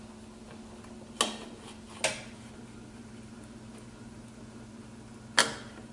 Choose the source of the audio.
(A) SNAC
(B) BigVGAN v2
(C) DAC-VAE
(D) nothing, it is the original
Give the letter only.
D